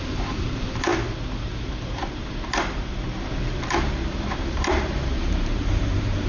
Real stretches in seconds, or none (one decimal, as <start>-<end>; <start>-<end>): 0.9-3.3